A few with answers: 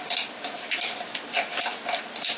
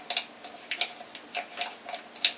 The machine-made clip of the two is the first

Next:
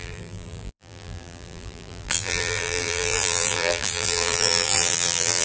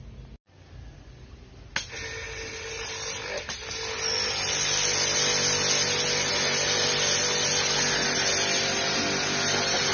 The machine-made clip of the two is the first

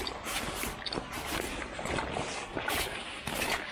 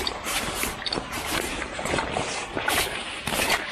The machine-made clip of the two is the second